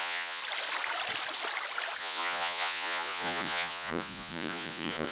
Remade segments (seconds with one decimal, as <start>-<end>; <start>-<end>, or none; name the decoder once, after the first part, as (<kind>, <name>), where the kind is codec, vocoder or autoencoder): 0.0-0.4 (vocoder, Vocos); 2.0-5.1